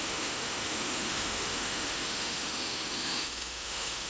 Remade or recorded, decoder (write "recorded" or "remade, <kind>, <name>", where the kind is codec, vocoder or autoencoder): remade, autoencoder, DAC-VAE